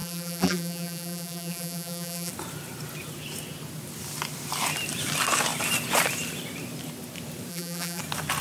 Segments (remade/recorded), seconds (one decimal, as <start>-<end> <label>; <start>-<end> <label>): 0.0-2.3 remade; 2.3-7.5 recorded; 7.5-8.0 remade; 8.0-8.4 recorded